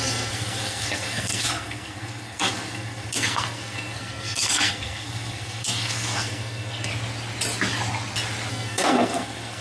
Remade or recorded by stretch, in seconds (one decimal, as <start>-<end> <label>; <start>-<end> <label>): 0.0-6.9 remade; 6.9-8.5 recorded; 8.5-9.6 remade